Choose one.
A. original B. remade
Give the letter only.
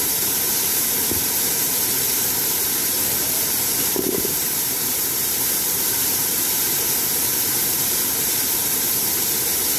B